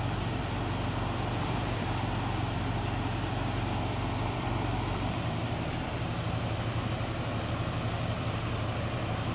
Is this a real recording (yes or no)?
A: no